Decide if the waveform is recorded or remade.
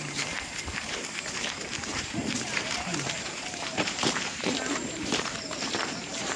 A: remade